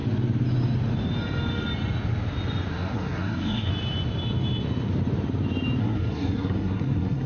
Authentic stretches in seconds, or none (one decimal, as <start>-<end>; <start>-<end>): 0.0-2.7; 3.7-5.8